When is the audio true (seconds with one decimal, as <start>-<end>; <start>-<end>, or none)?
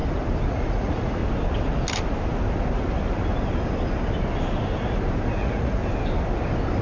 0.0-0.5; 1.2-5.3; 5.8-6.8